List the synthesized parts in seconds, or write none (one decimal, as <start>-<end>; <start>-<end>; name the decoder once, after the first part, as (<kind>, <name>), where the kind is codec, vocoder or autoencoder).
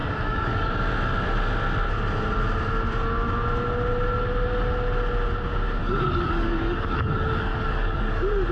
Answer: 0.0-0.7 (codec, DAC); 5.8-8.5